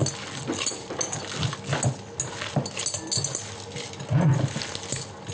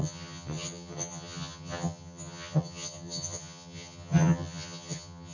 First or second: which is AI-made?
second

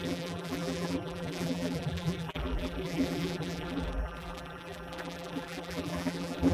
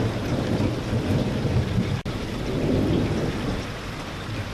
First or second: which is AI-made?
first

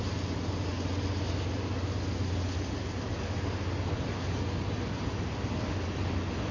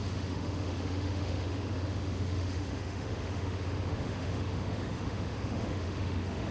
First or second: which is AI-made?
second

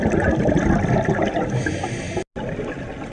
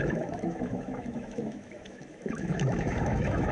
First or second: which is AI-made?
second